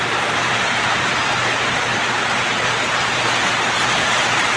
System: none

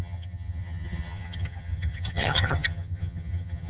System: vocoder, HiFi-GAN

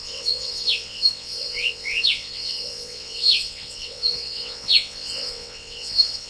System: vocoder, WaveNeXt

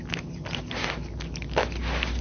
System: none